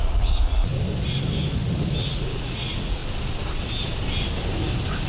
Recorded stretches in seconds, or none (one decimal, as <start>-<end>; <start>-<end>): 0.7-2.0; 3.0-5.1